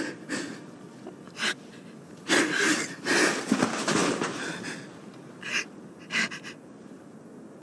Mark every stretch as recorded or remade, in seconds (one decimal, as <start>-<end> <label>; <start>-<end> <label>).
0.0-7.6 recorded